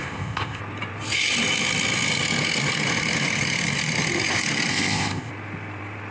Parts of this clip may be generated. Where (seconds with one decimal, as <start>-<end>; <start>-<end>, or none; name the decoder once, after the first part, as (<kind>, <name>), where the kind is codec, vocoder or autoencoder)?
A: 0.0-0.6 (codec, ZipCodec); 4.7-5.3